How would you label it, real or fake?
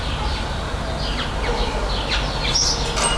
real